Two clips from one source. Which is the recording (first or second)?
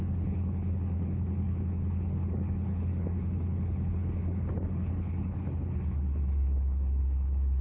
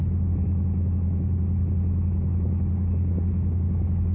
second